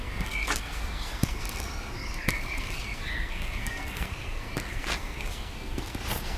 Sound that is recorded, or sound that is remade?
remade